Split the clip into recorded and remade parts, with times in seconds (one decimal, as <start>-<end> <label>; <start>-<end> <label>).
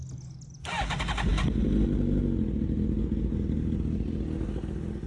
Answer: 0.0-5.1 recorded